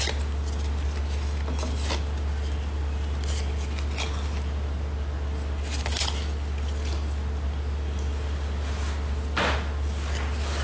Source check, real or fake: real